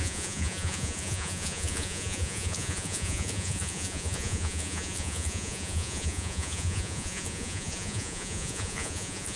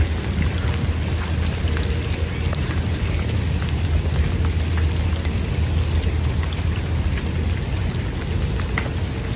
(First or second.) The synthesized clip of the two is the first